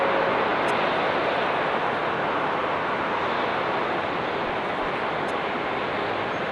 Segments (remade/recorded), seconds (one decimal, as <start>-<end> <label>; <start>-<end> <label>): 0.0-6.5 recorded